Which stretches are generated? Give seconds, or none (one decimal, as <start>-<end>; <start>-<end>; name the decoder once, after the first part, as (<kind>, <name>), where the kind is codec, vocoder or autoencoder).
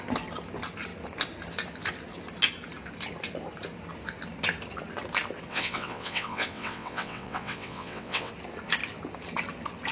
5.5-8.3 (vocoder, WaveNeXt)